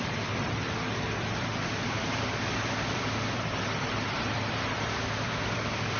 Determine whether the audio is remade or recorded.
remade